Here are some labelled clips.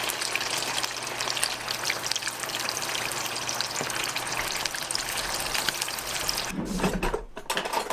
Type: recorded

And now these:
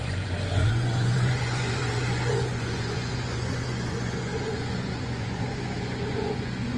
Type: remade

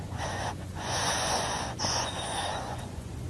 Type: remade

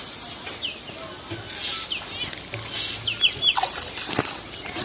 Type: recorded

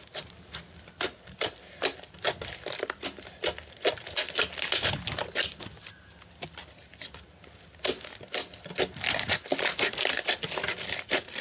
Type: recorded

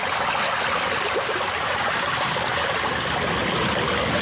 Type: recorded